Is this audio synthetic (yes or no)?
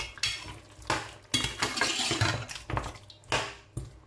no